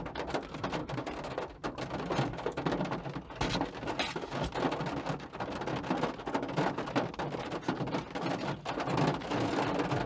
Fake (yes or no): no